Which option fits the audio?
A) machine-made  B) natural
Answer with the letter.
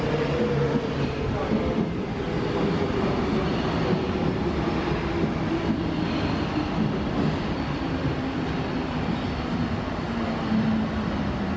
B